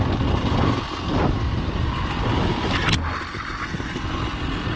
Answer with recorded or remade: recorded